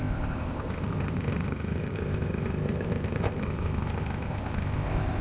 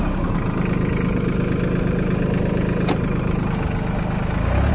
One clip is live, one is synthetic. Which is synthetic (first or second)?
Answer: first